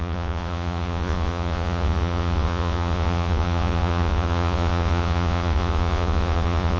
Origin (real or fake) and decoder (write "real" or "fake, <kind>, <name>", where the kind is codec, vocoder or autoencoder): fake, vocoder, Vocos